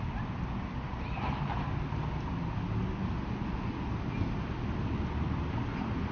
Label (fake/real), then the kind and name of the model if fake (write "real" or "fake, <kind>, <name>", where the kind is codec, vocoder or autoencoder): real